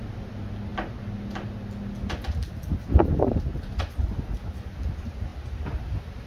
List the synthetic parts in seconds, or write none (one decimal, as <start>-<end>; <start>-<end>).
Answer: none